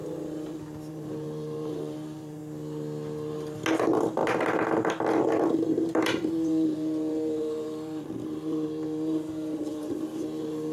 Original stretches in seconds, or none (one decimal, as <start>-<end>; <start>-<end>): 0.0-0.9; 2.4-3.8; 4.2-5.1